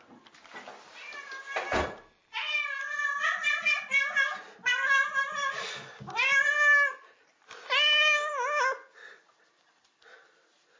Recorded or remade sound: recorded